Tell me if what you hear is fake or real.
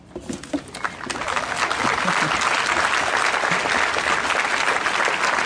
real